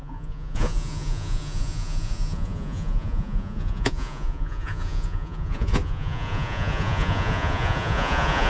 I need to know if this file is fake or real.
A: fake